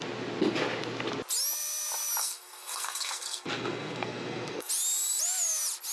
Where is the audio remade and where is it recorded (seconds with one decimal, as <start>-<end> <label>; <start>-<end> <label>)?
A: 0.0-2.2 recorded; 2.2-4.7 remade; 4.7-5.9 recorded